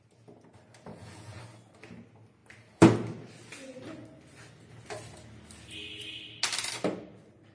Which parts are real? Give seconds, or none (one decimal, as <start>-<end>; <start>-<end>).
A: 0.0-0.9; 1.4-7.5